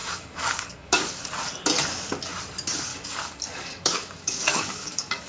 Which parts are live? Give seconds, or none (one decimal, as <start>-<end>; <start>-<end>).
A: 1.3-2.9